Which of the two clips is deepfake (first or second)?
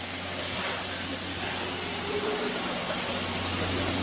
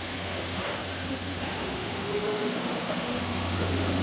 second